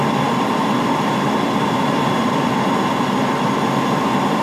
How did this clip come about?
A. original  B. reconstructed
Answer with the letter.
A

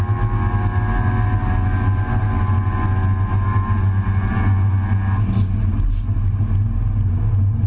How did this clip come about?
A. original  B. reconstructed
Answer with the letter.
A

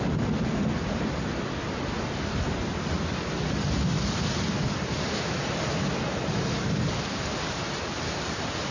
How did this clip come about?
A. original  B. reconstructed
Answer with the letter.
A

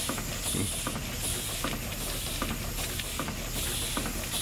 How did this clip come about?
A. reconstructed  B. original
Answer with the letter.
B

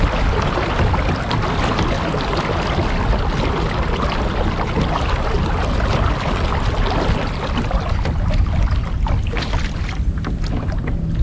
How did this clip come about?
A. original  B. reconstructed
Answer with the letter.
A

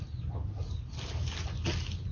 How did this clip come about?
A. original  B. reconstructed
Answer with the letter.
A